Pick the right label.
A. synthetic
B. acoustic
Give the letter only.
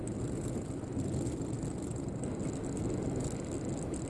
B